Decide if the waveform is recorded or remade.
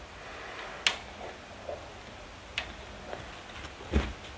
recorded